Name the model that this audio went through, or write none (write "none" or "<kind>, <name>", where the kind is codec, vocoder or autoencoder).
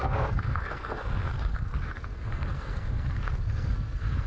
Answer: codec, SNAC